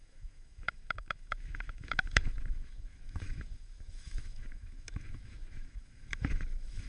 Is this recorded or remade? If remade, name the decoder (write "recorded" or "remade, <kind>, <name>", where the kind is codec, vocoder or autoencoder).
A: remade, autoencoder, DAC-VAE